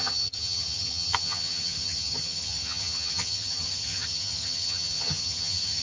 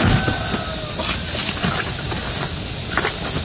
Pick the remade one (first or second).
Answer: first